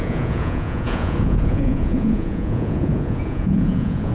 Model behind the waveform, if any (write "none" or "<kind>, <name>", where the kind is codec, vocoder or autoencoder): vocoder, Vocos